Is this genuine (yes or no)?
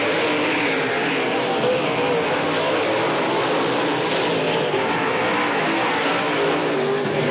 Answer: yes